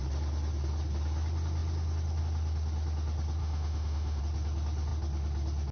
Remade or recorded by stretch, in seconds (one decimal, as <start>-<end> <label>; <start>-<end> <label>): 0.0-3.4 recorded; 3.4-4.2 remade; 4.2-5.7 recorded